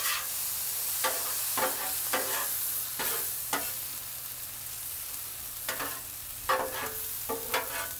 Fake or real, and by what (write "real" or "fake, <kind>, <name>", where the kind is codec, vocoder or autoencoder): real